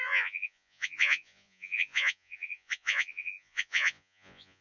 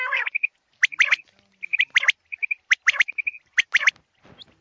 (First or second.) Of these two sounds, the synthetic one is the first